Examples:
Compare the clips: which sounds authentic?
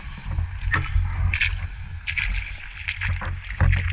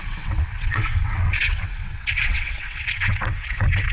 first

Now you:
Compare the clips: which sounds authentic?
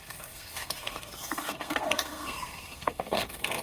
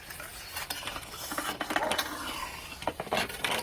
second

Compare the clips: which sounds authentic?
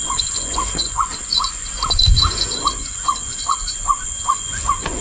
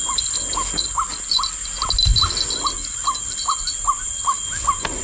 second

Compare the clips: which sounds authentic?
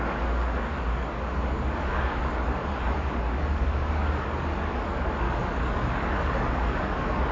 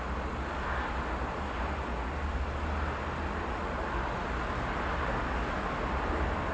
second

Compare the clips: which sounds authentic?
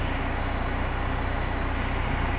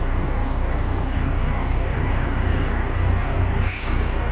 first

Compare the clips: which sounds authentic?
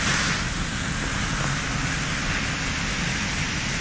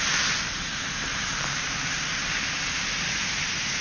first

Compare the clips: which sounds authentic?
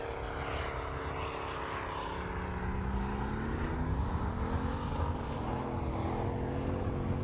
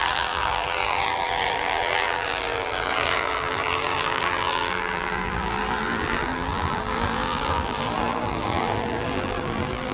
first